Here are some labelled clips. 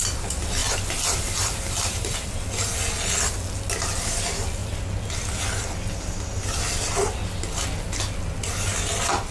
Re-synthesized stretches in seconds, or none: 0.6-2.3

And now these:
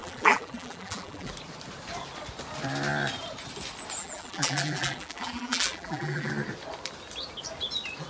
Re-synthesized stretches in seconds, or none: 0.0-1.3; 4.0-6.3

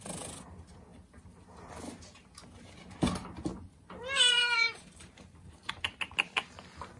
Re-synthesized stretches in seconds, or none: 3.5-5.7